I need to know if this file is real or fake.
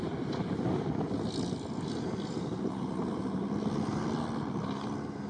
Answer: real